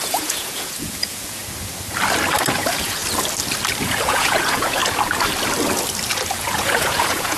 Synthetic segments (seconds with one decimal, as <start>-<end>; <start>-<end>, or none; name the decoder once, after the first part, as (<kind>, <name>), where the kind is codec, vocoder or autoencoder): 0.0-1.4 (vocoder, Vocos); 2.5-3.0; 3.8-4.8; 6.3-7.4